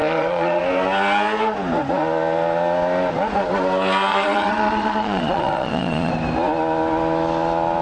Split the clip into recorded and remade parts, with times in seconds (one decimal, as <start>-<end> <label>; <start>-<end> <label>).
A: 0.0-0.6 remade; 0.6-4.1 recorded; 4.1-6.1 remade; 6.1-7.8 recorded